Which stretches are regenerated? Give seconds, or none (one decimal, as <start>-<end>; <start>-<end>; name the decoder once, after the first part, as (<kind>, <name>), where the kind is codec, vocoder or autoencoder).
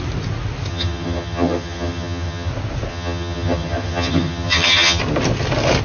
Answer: 0.7-2.5 (vocoder, HiFi-GAN); 2.9-5.0